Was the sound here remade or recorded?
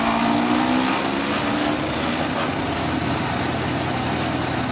recorded